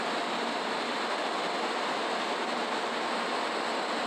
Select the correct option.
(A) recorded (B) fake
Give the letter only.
A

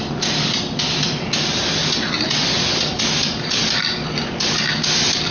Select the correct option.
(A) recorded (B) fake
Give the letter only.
A